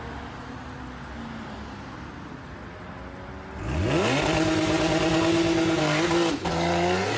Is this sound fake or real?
real